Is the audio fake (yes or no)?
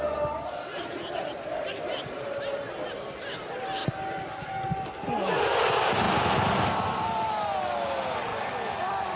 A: no